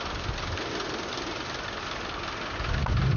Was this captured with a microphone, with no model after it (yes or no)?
yes